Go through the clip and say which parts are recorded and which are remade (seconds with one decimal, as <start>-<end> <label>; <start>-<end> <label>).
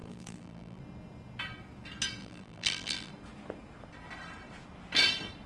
0.0-0.8 remade; 0.8-2.2 recorded; 2.2-3.1 remade; 3.1-5.5 recorded